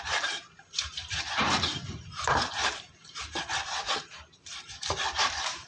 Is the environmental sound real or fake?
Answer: fake